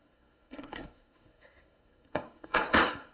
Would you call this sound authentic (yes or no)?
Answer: no